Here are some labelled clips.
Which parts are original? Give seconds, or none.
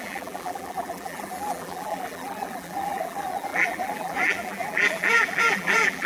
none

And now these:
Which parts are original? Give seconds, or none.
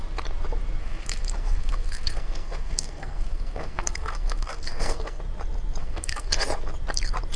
0.0-0.8; 5.2-5.8; 6.3-7.4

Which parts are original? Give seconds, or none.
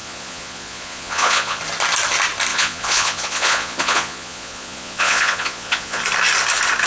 1.6-2.5; 6.0-6.9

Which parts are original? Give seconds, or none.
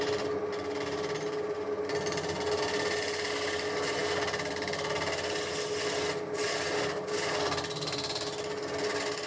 0.0-9.3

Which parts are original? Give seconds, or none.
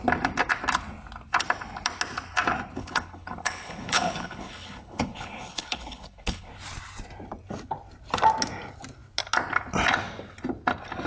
0.0-2.8; 6.5-11.1